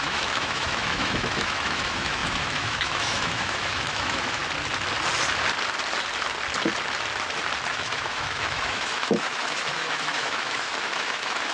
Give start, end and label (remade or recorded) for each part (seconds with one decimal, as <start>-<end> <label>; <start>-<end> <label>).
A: 0.0-4.4 remade; 4.4-7.7 recorded; 7.7-11.5 remade